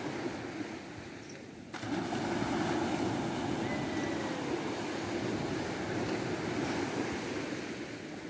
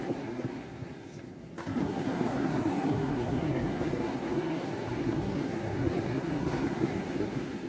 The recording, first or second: first